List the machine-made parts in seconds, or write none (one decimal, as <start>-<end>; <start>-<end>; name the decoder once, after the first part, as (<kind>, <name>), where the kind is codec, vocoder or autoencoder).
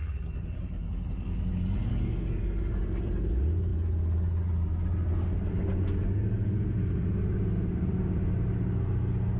1.9-2.4 (codec, DAC)